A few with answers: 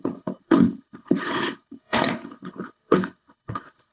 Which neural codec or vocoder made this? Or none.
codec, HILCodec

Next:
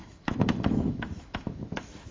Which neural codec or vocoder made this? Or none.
autoencoder, DAC-VAE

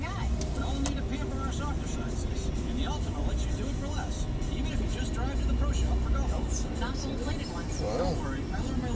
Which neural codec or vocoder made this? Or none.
none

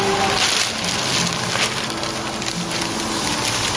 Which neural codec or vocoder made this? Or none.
none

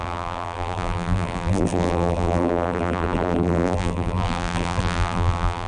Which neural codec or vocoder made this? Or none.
vocoder, BigVGAN v2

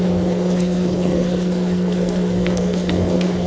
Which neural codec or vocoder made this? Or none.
codec, SNAC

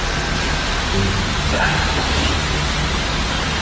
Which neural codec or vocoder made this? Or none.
none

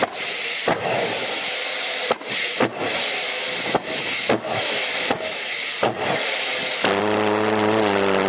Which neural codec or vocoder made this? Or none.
none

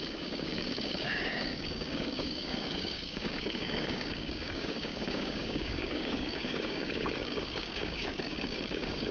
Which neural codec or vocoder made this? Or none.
codec, DAC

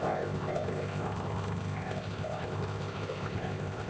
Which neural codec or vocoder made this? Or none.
codec, ZipCodec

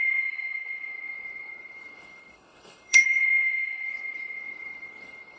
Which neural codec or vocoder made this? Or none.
codec, HILCodec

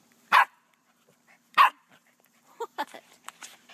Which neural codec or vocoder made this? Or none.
vocoder, BigVGAN v2